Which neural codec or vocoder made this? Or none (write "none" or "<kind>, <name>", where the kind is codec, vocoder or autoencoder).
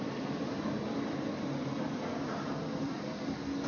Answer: vocoder, BigVGAN v2